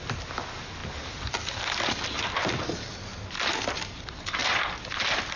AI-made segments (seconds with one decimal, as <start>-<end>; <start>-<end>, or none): none